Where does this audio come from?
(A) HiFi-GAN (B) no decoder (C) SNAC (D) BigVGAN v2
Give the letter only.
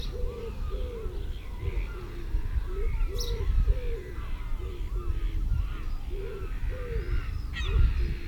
D